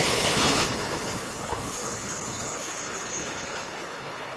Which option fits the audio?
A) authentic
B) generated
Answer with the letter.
B